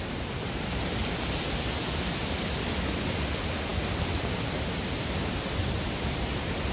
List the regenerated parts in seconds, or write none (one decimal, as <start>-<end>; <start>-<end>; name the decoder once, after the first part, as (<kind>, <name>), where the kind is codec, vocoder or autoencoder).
none